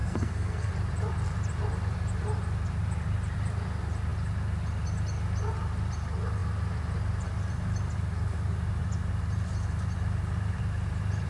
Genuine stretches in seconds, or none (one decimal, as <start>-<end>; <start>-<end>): 0.7-11.3

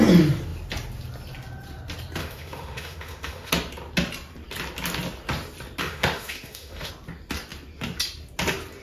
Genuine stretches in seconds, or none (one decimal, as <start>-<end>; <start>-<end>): 0.0-2.2; 3.5-5.8; 6.9-8.8

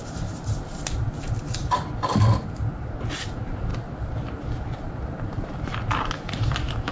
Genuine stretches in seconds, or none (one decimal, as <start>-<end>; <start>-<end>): 0.0-6.9